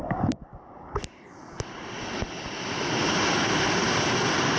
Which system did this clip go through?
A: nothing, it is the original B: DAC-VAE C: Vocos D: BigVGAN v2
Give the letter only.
A